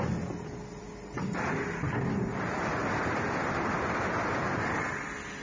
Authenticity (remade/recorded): recorded